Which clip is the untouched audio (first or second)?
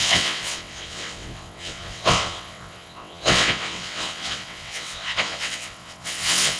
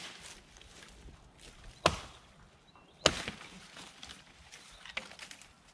second